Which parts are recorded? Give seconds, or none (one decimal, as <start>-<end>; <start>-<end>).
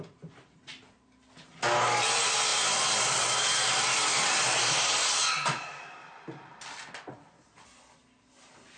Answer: 0.0-8.8